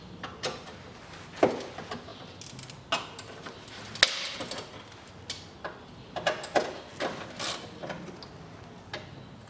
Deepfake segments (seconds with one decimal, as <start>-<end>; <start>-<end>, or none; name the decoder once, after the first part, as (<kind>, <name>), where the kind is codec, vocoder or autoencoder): none

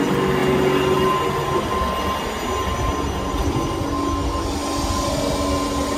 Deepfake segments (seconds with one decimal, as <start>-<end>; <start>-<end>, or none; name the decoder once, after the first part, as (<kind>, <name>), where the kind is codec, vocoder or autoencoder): none

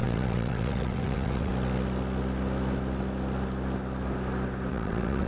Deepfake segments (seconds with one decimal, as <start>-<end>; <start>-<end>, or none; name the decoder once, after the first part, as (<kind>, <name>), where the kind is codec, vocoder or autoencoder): 0.0-1.5 (vocoder, WaveNeXt); 4.7-5.3

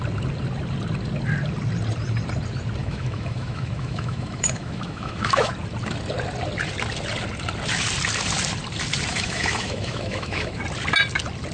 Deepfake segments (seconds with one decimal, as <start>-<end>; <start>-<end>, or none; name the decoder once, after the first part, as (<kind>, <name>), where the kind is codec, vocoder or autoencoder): 2.8-5.5 (autoencoder, DAC-VAE); 9.1-10.6

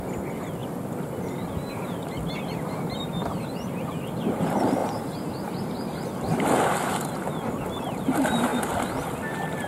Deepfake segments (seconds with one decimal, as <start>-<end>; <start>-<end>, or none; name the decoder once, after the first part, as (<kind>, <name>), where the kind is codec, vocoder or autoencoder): none

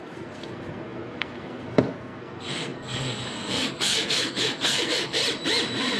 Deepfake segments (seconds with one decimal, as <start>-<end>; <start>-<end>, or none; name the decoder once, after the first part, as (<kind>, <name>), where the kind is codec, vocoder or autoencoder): 0.0-5.2 (codec, SNAC)

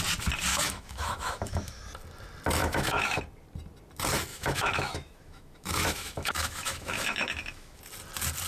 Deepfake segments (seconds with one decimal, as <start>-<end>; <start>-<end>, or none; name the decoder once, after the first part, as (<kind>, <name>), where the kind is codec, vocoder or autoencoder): 0.5-1.8 (autoencoder, DAC-VAE); 2.6-3.2; 4.3-7.8